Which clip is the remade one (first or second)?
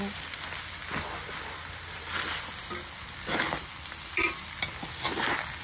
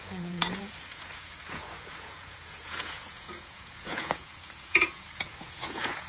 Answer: second